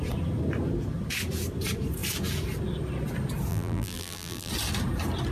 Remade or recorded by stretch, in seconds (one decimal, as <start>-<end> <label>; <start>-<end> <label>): 0.0-3.5 recorded; 3.5-4.5 remade; 4.5-5.3 recorded